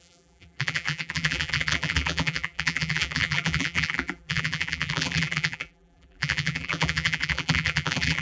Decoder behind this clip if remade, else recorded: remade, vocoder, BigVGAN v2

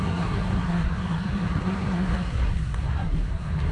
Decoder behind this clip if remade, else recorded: remade, codec, SNAC